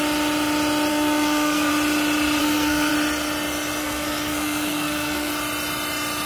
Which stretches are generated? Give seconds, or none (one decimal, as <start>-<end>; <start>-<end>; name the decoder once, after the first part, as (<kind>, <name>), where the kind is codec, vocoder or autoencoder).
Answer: 0.9-1.7 (codec, SNAC); 2.4-2.9; 3.8-5.3